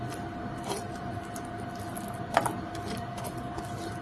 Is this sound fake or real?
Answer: real